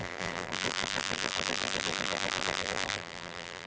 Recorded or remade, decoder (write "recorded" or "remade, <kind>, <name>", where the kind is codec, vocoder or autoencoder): remade, vocoder, BigVGAN v2